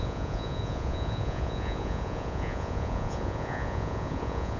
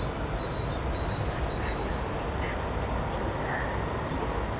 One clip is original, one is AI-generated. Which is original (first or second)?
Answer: second